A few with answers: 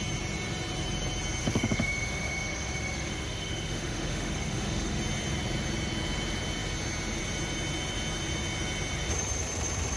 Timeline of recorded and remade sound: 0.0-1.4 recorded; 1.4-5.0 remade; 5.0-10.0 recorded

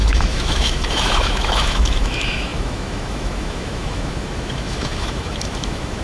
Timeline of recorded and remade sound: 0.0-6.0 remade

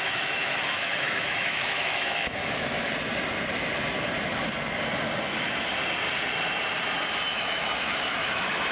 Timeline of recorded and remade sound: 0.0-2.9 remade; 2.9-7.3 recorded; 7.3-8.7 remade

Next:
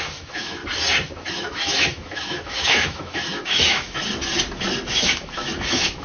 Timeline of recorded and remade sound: 0.0-0.6 remade; 0.6-1.3 recorded; 1.3-4.0 remade; 4.0-4.9 recorded; 4.9-6.0 remade

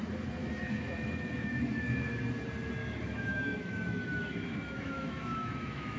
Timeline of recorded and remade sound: 0.0-0.4 recorded; 0.4-2.2 remade; 2.2-2.8 recorded; 2.8-6.0 remade